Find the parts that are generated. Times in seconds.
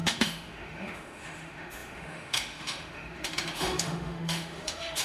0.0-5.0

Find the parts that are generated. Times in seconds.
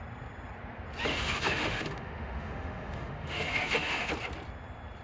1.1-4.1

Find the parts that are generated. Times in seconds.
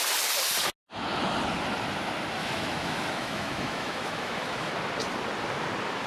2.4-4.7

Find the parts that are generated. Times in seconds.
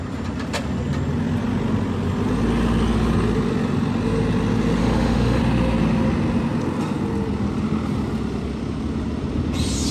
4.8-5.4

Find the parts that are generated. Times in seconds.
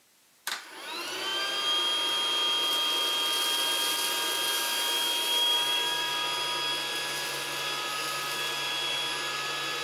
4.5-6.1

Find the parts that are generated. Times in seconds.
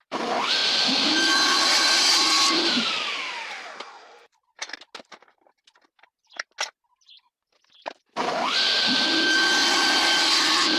none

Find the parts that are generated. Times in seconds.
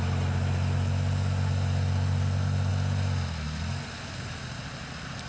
none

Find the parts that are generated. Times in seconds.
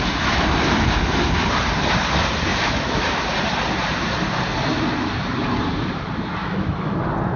2.5-3.2; 6.4-7.0